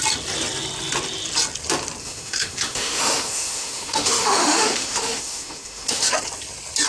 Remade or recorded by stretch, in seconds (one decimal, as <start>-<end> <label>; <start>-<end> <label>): 0.0-2.0 recorded; 2.0-6.1 remade; 6.1-6.9 recorded